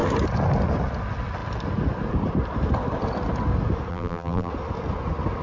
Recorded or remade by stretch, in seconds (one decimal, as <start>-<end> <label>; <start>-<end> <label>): 0.0-3.9 recorded; 3.9-4.5 remade; 4.5-5.4 recorded